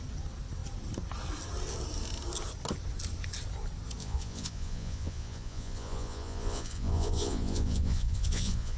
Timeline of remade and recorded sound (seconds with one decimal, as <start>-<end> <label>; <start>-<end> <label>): 0.0-4.0 recorded; 4.0-8.8 remade